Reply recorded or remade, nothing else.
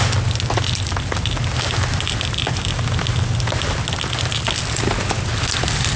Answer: recorded